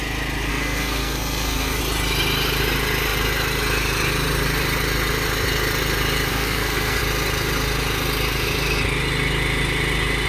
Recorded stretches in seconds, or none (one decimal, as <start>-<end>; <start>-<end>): 0.0-0.5; 1.8-6.3; 7.0-10.3